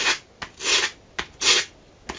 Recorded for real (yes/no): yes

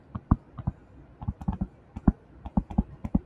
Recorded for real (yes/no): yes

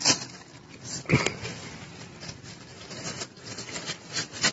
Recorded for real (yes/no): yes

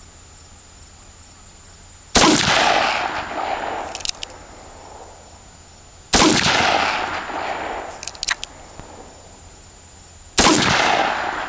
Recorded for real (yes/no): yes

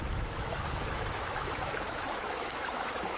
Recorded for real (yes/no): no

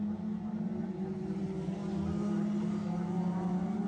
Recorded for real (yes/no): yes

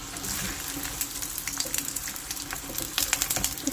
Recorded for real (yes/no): no